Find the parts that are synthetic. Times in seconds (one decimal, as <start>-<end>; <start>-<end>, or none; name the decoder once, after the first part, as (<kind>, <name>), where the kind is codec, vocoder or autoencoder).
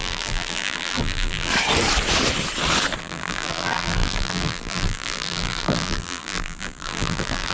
0.0-1.5 (vocoder, BigVGAN v2); 3.0-7.5